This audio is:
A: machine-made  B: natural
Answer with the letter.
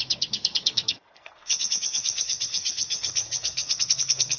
A